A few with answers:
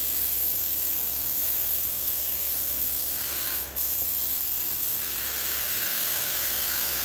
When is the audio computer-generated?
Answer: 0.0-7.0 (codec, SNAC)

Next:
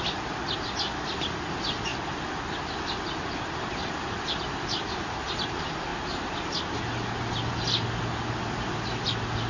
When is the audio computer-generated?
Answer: none

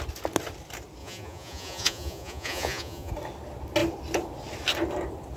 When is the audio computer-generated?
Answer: 1.0-3.1 (vocoder, Vocos)

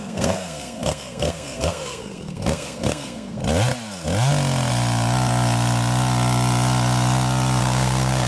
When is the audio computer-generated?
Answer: 0.0-3.4 (codec, SNAC); 7.6-8.3

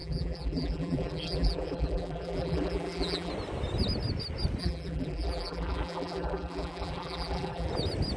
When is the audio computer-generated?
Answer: 0.0-3.3 (vocoder, BigVGAN v2); 4.6-7.7